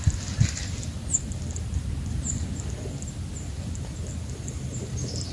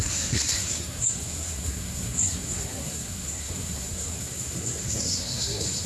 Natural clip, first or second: first